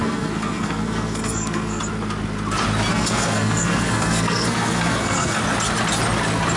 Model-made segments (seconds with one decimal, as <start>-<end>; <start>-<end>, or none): 0.0-1.8; 2.9-5.4